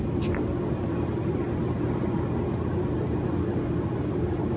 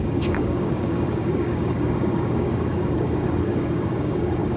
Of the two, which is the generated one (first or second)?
second